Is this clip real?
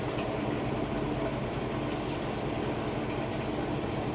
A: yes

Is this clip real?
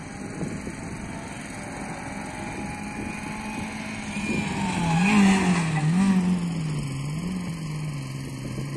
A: yes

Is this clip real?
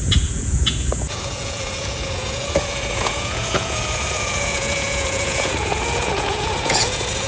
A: no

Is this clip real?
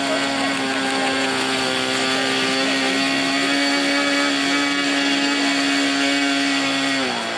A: yes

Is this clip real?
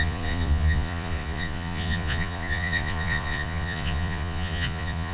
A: no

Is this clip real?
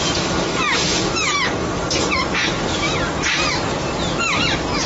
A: yes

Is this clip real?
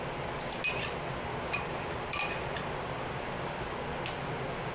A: yes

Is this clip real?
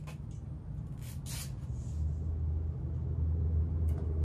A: yes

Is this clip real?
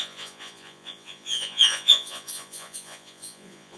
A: no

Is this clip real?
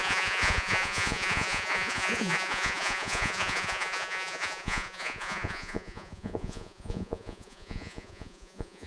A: no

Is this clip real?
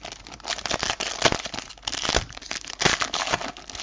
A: yes